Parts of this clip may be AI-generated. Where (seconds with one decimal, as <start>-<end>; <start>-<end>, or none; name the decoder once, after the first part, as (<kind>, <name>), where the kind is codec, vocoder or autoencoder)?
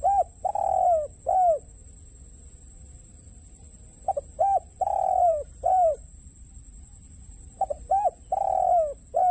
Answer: 3.1-7.9 (vocoder, BigVGAN v2)